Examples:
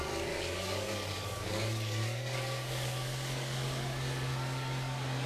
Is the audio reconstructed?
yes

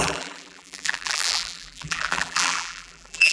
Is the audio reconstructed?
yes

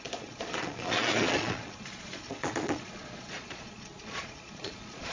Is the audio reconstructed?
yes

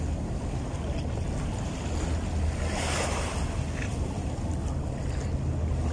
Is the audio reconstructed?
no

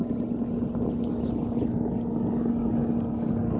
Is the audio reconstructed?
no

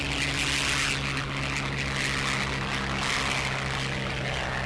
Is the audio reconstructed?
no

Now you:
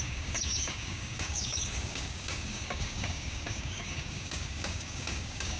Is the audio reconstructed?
yes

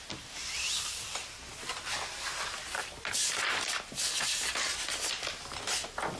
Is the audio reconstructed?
no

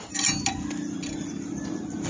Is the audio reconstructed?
no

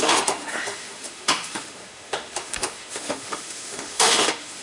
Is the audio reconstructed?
yes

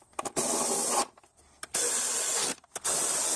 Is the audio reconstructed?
no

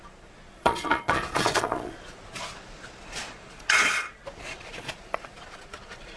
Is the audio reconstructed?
yes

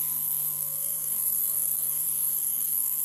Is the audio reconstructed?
yes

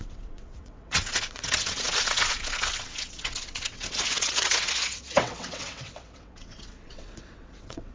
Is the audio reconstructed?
yes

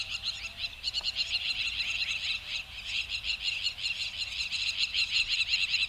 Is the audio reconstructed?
no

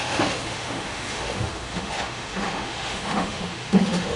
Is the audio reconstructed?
yes